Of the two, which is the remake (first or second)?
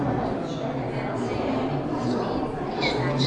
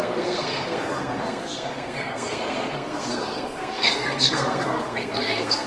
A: second